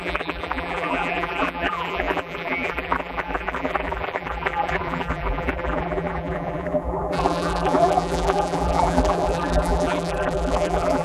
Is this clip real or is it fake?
fake